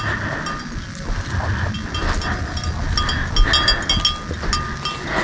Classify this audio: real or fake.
real